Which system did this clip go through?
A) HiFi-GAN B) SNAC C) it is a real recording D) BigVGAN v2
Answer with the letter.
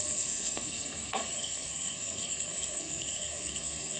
B